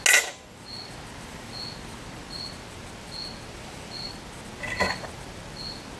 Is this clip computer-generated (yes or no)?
no